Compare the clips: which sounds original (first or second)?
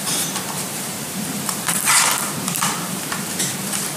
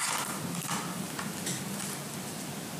second